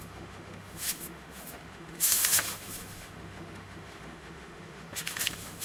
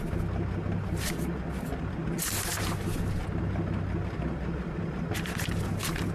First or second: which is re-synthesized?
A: first